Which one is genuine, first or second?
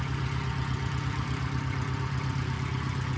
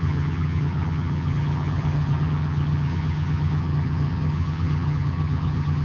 first